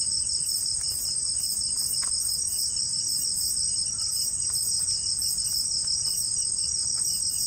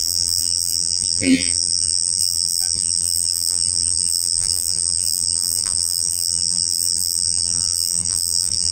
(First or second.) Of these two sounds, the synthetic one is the second